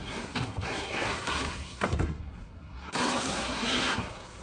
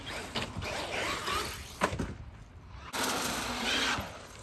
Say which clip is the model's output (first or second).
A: first